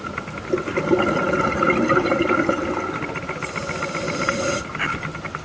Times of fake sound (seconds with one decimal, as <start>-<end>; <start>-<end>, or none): none